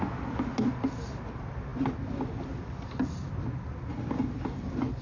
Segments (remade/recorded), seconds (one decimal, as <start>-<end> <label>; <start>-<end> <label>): 0.0-5.0 recorded